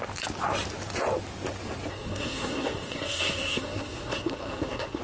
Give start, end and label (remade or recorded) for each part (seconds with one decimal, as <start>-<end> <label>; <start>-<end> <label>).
0.0-1.9 recorded; 1.9-5.0 remade